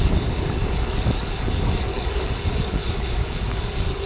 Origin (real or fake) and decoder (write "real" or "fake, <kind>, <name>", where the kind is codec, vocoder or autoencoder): fake, codec, DAC